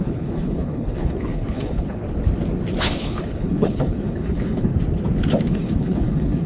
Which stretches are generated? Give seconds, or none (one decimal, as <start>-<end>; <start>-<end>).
0.0-2.0; 2.8-4.7; 5.5-6.5